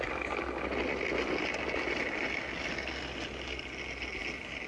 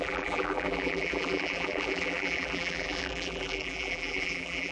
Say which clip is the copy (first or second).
second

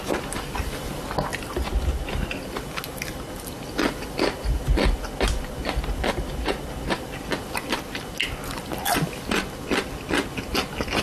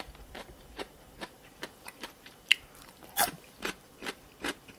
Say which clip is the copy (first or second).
second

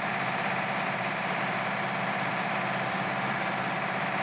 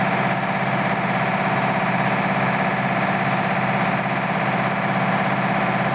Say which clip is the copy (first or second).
first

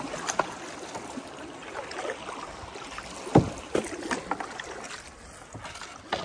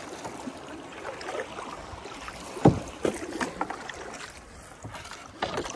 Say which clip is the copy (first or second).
second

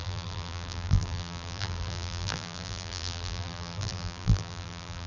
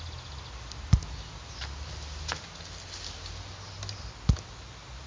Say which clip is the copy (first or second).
first